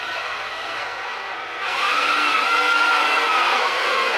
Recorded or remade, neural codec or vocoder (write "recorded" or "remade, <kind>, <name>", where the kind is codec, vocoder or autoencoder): remade, codec, SNAC